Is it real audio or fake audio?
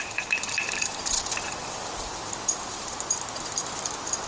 fake